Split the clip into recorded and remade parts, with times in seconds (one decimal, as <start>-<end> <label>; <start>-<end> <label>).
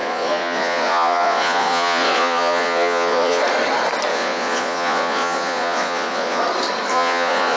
0.0-3.4 remade; 3.4-4.1 recorded; 4.1-6.4 remade; 6.4-6.9 recorded; 6.9-7.6 remade